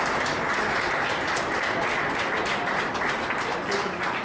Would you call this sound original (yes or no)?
yes